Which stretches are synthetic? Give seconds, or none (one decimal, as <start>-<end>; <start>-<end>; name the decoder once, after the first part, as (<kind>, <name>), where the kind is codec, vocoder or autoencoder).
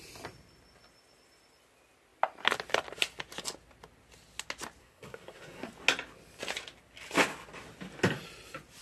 4.8-5.7 (codec, SNAC)